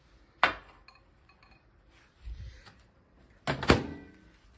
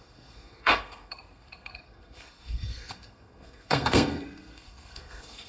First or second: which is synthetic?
second